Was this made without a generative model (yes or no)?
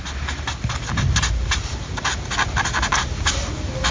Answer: yes